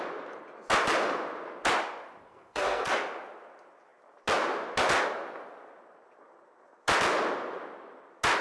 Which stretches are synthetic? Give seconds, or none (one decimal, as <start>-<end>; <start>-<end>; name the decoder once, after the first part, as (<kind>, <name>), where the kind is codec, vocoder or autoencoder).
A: 2.2-2.9 (codec, SNAC)